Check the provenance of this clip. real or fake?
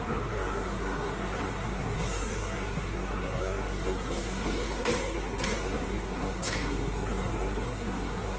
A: fake